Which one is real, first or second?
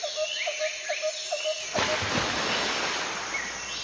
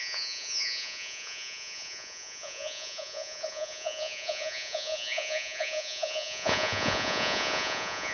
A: first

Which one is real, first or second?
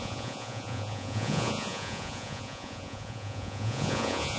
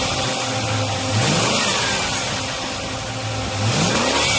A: second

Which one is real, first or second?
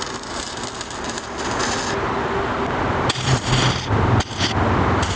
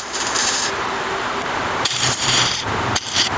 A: first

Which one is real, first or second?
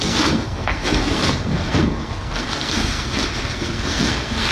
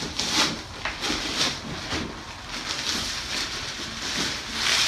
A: second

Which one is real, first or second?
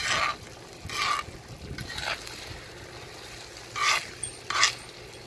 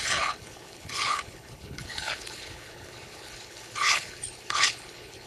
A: first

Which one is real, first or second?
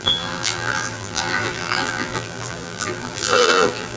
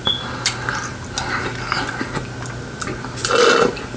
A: second